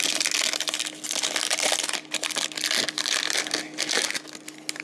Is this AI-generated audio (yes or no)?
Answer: no